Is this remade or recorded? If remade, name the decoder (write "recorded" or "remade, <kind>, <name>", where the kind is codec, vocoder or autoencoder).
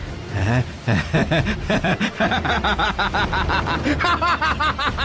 remade, vocoder, BigVGAN v2